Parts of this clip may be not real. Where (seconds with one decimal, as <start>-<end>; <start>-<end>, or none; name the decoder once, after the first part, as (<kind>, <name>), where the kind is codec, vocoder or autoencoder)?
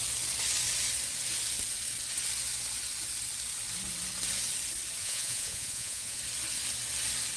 5.0-6.2 (vocoder, Vocos)